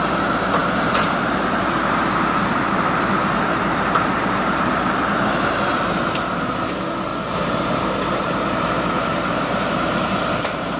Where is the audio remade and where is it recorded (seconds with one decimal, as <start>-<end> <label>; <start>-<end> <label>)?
0.0-7.1 remade; 7.1-8.1 recorded; 8.1-10.8 remade